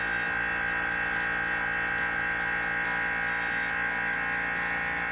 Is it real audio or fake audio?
real